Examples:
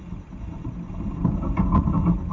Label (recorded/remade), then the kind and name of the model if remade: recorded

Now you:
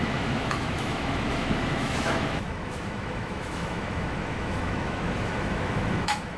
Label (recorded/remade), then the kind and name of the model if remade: remade, autoencoder, DAC-VAE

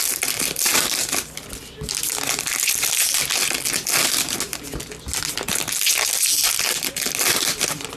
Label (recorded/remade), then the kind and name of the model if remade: recorded